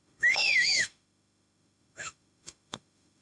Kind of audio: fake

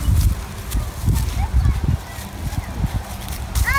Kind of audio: real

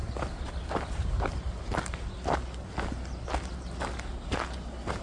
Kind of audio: real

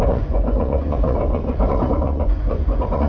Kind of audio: fake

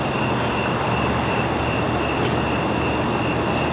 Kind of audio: real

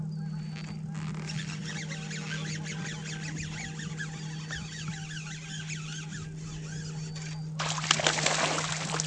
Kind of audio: real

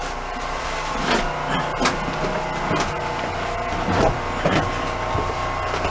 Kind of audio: real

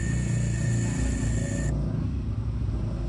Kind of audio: real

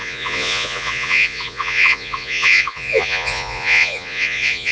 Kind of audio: fake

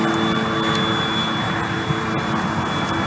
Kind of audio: real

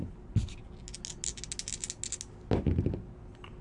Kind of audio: real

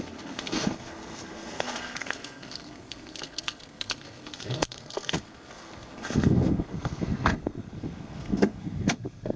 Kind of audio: fake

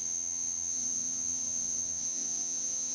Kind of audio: fake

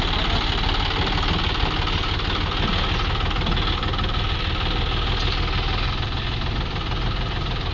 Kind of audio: real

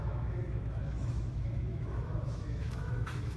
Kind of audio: fake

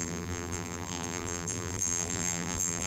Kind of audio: fake